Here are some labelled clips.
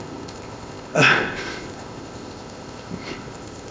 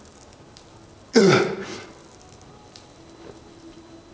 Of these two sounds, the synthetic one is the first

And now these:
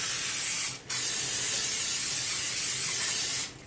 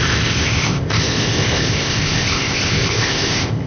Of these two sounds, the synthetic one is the second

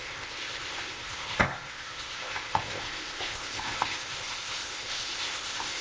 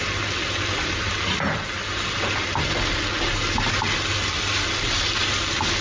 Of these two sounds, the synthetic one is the first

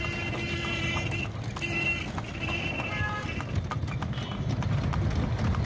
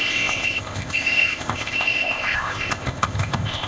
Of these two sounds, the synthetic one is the second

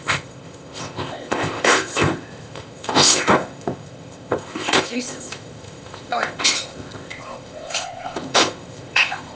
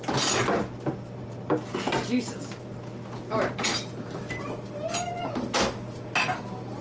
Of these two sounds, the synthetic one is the first